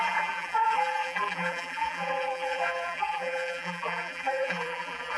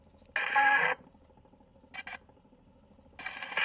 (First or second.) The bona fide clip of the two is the second